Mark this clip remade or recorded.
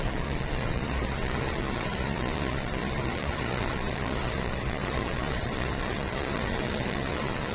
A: remade